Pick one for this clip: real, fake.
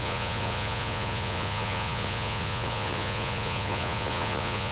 fake